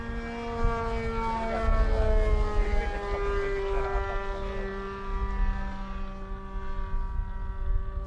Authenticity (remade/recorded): recorded